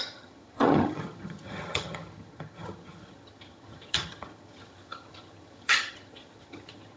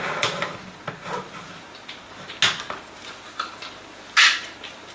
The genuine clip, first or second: second